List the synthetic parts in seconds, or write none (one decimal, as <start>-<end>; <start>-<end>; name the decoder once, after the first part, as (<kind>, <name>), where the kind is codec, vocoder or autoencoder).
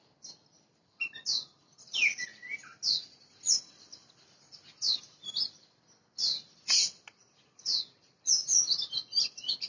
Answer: none